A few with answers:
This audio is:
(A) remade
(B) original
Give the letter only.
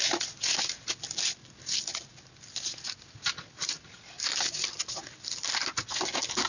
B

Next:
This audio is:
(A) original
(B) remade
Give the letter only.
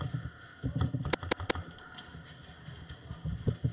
A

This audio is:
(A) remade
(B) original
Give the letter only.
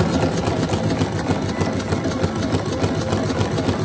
B